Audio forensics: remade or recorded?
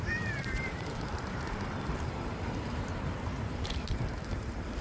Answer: remade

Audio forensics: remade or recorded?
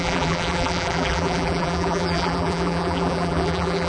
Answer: remade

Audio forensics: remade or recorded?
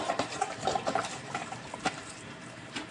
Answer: remade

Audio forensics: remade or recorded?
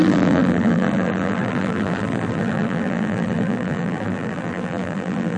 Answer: remade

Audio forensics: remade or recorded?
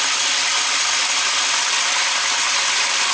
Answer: recorded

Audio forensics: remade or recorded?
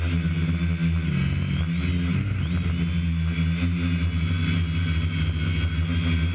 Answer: recorded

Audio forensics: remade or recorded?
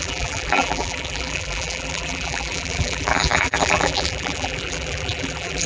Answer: remade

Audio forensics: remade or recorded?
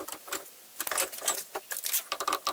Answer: recorded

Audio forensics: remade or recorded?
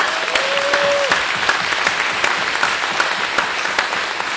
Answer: recorded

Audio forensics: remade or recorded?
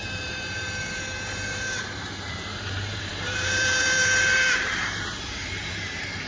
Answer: remade